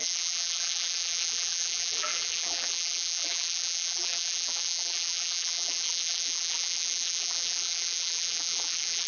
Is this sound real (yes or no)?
no